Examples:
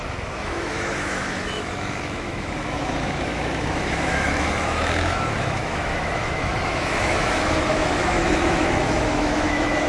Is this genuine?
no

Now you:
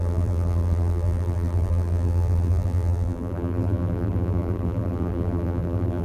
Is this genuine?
no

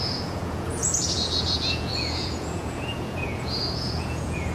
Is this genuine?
no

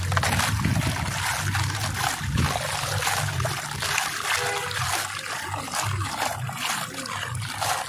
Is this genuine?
yes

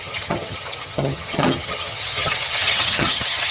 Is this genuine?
no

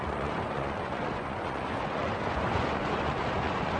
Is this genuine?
no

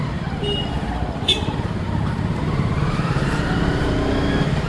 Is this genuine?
no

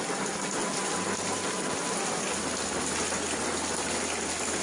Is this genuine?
yes